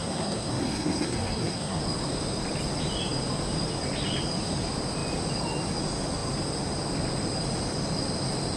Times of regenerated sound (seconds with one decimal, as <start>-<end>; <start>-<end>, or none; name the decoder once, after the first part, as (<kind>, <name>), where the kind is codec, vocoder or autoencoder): 0.0-1.8 (codec, SNAC)